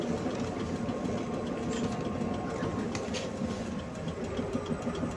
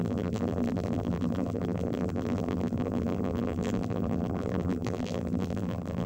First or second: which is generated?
second